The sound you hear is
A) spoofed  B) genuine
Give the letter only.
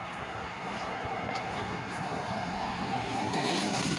A